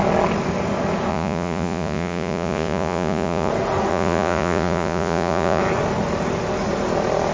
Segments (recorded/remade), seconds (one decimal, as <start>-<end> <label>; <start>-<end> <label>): 0.0-1.1 recorded; 1.1-3.5 remade; 3.5-3.9 recorded; 3.9-5.6 remade; 5.6-7.3 recorded